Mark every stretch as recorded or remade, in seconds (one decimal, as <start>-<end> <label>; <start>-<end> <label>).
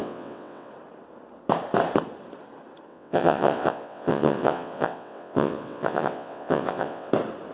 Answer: 0.0-0.7 remade; 0.7-2.9 recorded; 2.9-7.1 remade; 7.1-7.5 recorded